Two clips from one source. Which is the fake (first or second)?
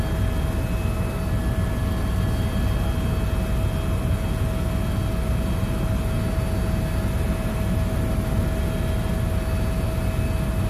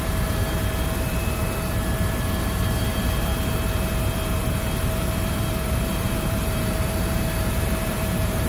second